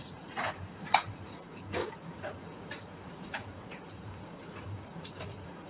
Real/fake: fake